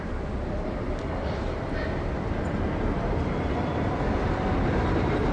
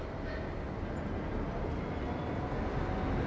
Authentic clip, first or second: second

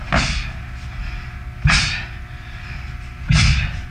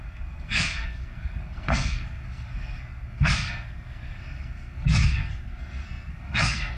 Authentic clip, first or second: first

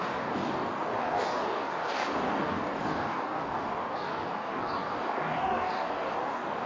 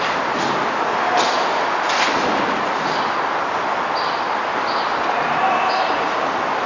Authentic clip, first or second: second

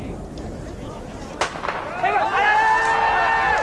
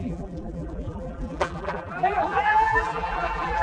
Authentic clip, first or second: first